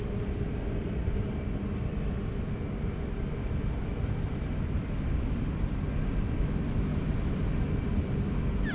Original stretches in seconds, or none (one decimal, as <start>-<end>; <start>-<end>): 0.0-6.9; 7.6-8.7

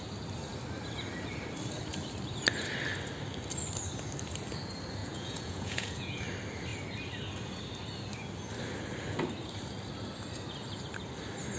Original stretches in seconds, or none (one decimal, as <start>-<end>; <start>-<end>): 0.0-5.0; 6.2-11.6

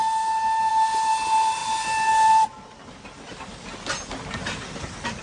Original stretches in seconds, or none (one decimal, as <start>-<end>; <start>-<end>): 0.0-5.2

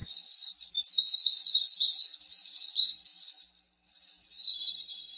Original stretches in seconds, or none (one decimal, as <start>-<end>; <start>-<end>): 0.0-5.2

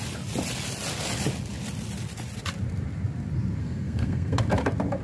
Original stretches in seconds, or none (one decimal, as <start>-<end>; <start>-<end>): 0.0-3.6; 4.4-5.0

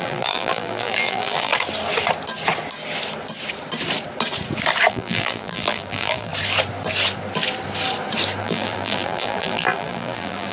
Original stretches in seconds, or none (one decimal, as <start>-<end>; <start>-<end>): 1.5-4.9; 6.3-8.4

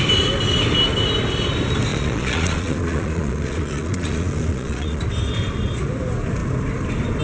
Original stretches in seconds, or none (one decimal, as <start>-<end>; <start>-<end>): 0.0-1.9; 5.0-7.2